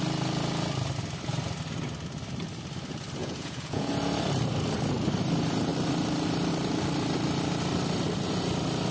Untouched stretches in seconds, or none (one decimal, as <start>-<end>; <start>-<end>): 0.0-3.2; 3.9-8.9